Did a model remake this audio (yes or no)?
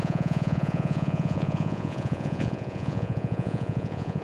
yes